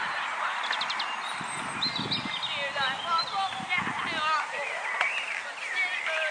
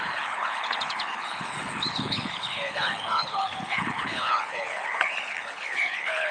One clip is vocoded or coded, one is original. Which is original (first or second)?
first